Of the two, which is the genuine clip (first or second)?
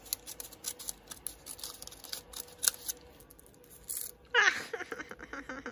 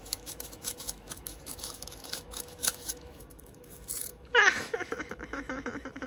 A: first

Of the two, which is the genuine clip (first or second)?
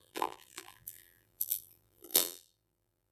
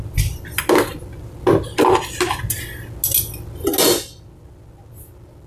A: second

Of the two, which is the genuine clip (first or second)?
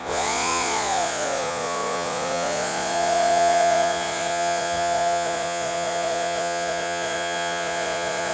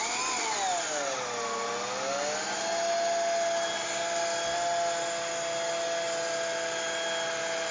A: second